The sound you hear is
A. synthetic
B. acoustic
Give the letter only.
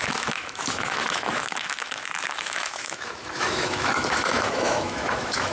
A